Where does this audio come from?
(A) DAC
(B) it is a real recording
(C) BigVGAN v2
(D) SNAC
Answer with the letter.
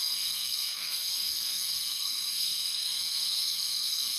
D